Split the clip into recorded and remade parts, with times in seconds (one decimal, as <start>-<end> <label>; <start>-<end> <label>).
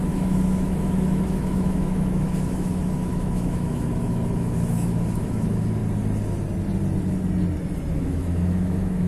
0.0-5.8 remade; 5.8-7.9 recorded; 7.9-9.1 remade